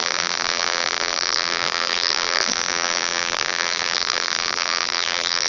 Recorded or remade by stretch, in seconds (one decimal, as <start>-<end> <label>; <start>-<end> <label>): 0.0-5.5 remade